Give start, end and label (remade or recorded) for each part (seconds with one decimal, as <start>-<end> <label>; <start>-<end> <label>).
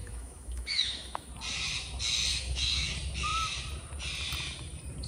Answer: 0.0-1.3 remade; 1.3-2.3 recorded; 2.3-2.9 remade; 2.9-5.1 recorded